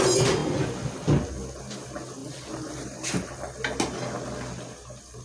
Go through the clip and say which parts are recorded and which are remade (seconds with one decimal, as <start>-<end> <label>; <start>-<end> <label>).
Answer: 0.0-2.2 recorded; 2.2-3.4 remade; 3.4-5.2 recorded